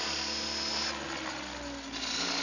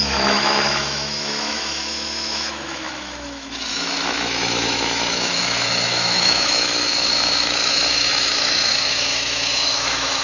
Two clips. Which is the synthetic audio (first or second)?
second